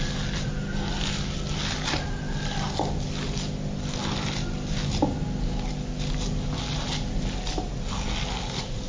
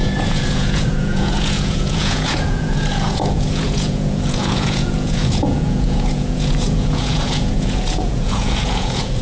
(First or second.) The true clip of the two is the first